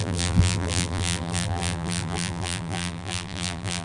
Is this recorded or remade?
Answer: remade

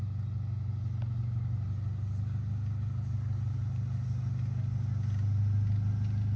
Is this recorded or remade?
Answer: recorded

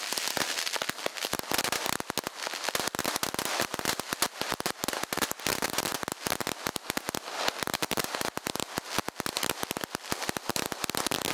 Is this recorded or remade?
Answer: recorded